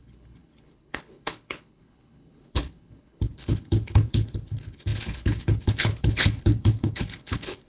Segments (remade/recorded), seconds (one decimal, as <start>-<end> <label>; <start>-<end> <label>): 0.0-7.7 remade